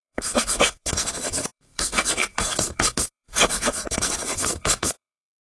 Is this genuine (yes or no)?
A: no